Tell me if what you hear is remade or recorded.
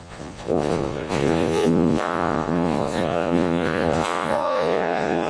remade